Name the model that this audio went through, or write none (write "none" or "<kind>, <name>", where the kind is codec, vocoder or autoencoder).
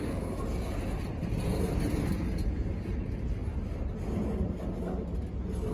none